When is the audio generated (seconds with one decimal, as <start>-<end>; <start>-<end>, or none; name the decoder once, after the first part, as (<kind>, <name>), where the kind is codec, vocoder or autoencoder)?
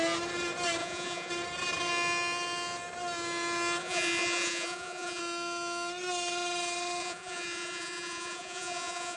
0.8-1.3 (vocoder, Vocos); 3.8-5.2; 7.0-9.2